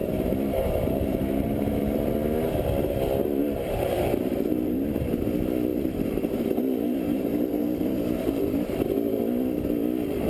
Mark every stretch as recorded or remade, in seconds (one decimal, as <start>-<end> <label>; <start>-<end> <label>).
0.0-2.0 remade; 2.0-3.4 recorded; 3.4-5.1 remade; 5.1-5.7 recorded; 5.7-9.2 remade; 9.2-10.3 recorded